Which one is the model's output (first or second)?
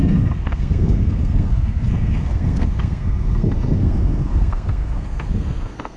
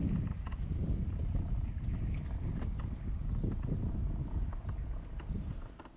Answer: first